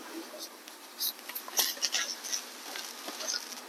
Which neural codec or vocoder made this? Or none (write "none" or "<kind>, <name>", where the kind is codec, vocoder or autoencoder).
none